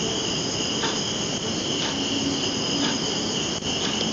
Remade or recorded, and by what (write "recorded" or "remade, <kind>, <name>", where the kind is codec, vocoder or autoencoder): recorded